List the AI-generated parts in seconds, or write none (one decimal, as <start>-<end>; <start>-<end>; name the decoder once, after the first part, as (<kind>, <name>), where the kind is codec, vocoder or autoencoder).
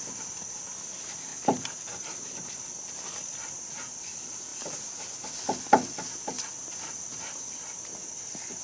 none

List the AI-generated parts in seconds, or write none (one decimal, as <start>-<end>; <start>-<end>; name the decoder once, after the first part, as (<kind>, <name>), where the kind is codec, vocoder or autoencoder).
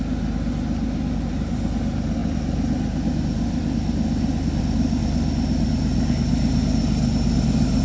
none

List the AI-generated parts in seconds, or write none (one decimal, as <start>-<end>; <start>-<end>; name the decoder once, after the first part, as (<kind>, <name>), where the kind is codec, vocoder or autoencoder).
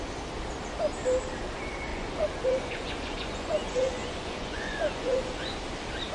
1.9-5.6 (vocoder, Vocos)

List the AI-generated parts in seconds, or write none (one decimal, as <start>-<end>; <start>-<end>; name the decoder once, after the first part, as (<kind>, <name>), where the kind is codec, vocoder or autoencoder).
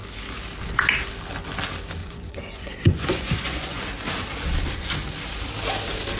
2.0-3.8 (vocoder, Vocos)